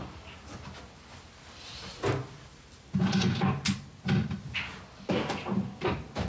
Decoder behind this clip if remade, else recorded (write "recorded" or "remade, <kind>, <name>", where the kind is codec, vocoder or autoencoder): recorded